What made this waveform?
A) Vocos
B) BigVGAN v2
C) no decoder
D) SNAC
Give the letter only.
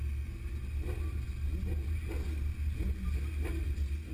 C